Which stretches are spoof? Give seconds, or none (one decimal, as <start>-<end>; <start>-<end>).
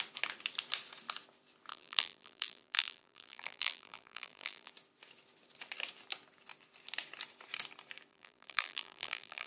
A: 1.7-4.7; 8.1-9.5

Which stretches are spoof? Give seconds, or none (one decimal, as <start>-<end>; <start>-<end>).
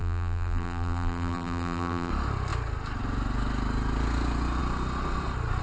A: 0.0-2.1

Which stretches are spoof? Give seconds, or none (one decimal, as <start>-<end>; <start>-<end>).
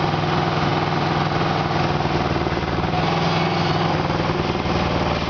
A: none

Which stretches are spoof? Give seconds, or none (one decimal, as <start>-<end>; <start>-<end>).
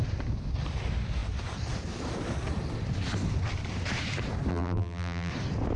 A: 4.5-5.3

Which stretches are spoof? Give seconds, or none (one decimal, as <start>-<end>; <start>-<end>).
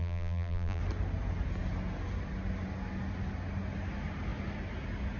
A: 0.0-0.8